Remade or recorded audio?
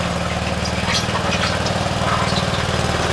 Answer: recorded